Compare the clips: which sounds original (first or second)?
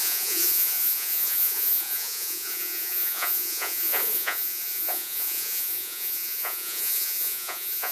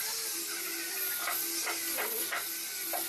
second